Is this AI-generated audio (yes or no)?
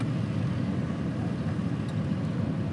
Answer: no